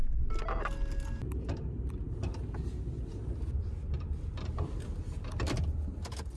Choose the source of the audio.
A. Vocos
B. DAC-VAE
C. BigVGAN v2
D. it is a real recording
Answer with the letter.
D